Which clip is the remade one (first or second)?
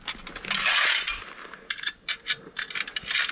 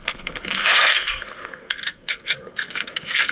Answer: second